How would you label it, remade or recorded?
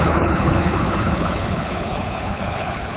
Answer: remade